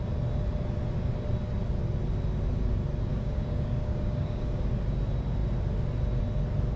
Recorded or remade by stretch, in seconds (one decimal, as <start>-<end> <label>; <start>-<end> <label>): 0.0-3.1 recorded; 3.1-4.6 remade; 4.6-6.8 recorded